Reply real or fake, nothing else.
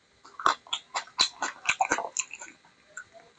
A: real